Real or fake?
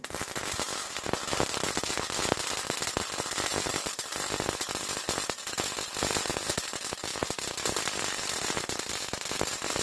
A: real